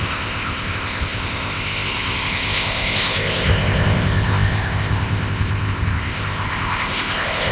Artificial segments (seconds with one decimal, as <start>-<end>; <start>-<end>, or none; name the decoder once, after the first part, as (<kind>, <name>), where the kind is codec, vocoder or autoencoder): 0.0-7.5 (codec, ZipCodec)